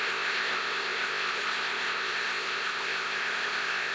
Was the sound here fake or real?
fake